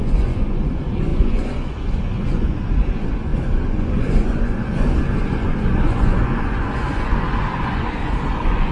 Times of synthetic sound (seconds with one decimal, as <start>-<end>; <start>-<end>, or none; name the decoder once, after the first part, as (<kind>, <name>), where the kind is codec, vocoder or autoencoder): 0.0-8.7 (vocoder, Vocos)